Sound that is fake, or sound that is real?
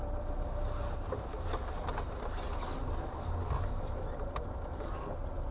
real